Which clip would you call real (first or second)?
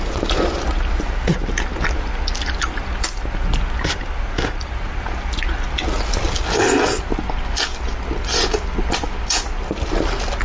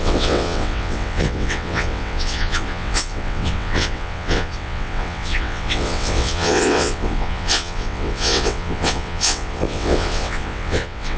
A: first